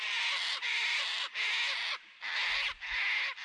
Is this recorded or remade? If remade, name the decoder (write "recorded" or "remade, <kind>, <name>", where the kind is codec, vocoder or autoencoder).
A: recorded